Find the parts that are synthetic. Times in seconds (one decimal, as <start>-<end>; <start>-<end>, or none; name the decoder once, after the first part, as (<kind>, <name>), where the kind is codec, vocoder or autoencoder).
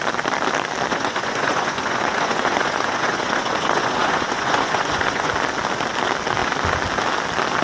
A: 0.9-5.3 (vocoder, Vocos)